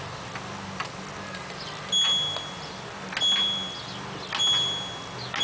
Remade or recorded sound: recorded